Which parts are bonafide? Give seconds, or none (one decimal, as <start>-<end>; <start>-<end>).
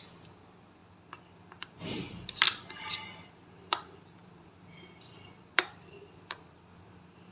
none